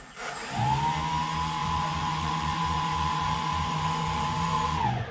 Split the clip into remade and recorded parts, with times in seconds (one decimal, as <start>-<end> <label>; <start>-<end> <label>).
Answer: 0.0-1.6 recorded; 1.6-5.1 remade